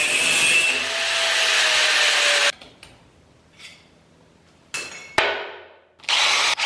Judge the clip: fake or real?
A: real